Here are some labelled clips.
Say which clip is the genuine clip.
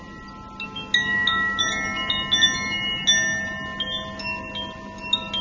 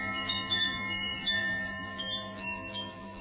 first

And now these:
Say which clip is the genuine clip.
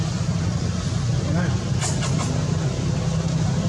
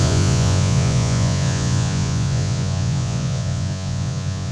first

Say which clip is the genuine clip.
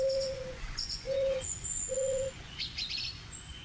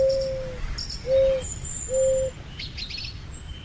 second